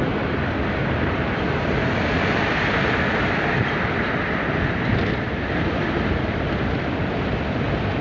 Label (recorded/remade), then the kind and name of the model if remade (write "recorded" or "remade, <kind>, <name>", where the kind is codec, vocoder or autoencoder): remade, vocoder, BigVGAN v2